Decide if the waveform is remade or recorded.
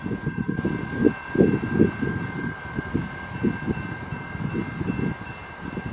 recorded